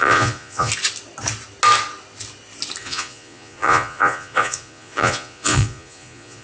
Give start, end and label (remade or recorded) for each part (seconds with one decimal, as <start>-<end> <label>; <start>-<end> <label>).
0.0-0.7 remade; 0.7-2.8 recorded; 2.8-6.4 remade

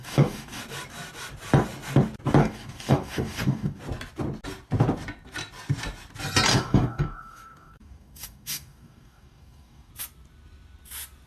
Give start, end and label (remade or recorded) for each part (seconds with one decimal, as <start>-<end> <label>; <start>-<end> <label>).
0.0-0.6 remade; 0.6-2.4 recorded; 2.4-3.8 remade; 3.8-6.5 recorded; 6.5-9.9 remade; 9.9-11.3 recorded